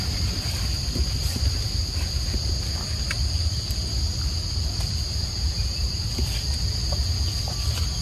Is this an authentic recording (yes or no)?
yes